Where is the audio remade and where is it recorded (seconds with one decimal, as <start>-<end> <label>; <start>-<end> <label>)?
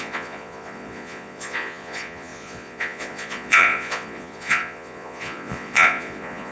0.0-6.5 remade